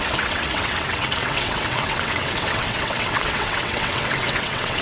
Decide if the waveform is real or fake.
fake